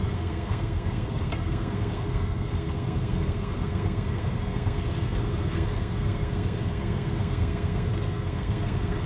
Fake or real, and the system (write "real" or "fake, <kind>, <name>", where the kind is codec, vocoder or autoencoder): fake, codec, SNAC